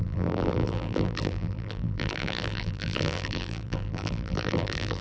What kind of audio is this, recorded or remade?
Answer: remade